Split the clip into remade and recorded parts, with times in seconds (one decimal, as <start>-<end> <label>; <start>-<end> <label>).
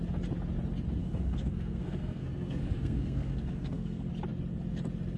0.0-1.0 recorded; 1.0-4.1 remade; 4.1-5.2 recorded